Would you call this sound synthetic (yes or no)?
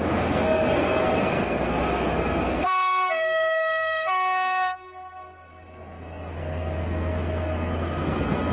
yes